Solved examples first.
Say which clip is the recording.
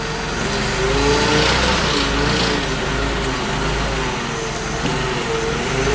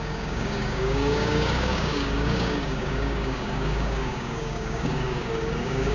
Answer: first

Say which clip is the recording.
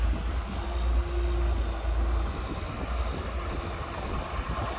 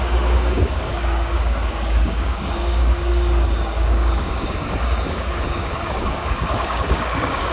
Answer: first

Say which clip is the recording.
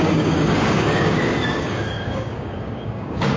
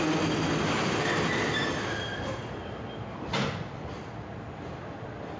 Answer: second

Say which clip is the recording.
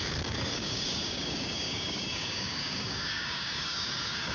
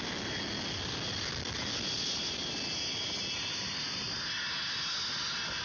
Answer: second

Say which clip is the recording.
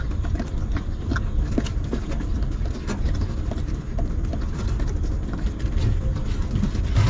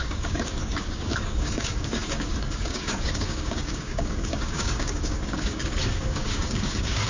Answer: first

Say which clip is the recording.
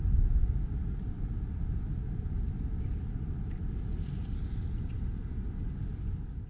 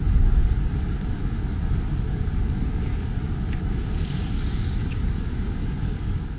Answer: first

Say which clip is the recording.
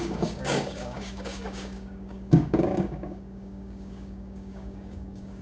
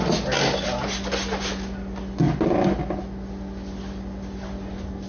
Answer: second